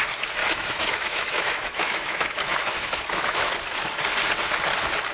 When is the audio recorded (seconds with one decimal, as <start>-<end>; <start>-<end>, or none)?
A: 0.0-0.4; 3.5-5.1